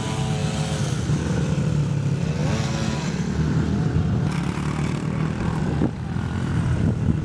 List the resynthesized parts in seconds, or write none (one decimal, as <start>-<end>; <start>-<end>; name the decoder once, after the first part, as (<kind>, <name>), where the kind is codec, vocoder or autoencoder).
none